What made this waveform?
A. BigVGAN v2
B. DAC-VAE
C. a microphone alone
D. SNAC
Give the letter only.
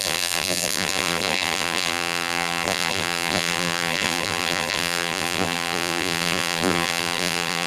A